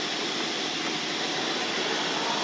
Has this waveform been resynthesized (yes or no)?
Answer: no